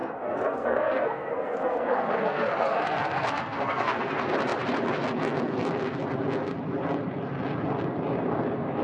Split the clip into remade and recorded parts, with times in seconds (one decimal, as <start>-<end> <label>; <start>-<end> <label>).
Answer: 0.0-4.0 remade; 4.0-8.8 recorded